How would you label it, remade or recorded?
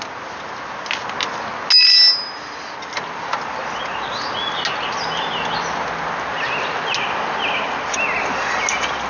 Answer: recorded